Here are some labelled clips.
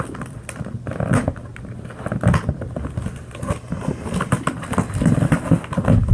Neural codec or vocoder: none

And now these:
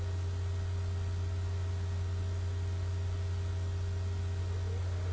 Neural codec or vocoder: none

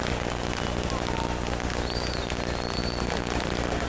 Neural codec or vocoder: none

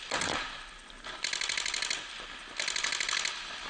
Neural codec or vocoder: none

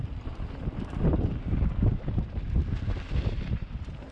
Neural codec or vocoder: none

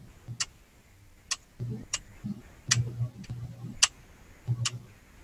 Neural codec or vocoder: none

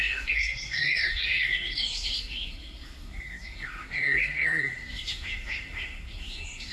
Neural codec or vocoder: codec, SNAC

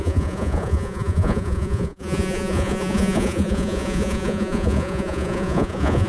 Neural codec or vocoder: vocoder, Vocos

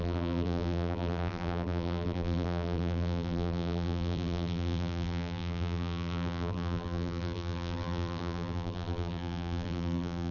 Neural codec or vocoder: vocoder, BigVGAN v2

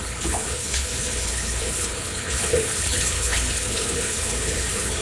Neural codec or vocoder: codec, HILCodec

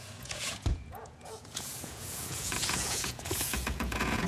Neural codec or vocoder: vocoder, Vocos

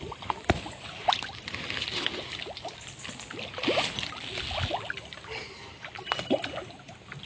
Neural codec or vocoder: none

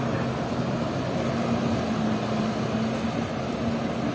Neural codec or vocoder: none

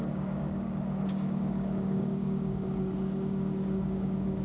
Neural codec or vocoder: codec, DAC